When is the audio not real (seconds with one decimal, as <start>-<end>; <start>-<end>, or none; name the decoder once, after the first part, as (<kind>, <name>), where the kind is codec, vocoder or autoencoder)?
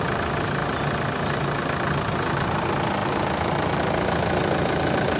none